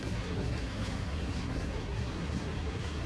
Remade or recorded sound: remade